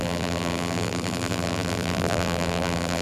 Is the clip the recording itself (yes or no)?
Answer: no